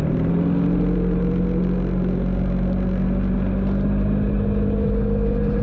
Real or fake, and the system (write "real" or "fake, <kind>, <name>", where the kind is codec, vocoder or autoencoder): real